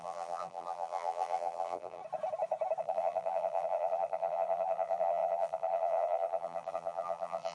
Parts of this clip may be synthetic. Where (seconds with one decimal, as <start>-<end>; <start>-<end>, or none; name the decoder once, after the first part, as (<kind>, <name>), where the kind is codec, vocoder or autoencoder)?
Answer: 0.0-2.0 (vocoder, BigVGAN v2); 2.8-7.5